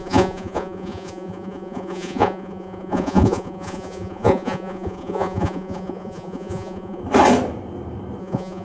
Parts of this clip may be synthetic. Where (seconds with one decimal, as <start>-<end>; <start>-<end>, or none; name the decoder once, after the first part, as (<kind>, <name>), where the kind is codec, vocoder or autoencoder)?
0.0-7.0 (vocoder, Vocos); 8.2-8.6